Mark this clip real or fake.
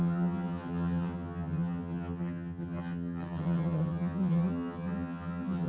fake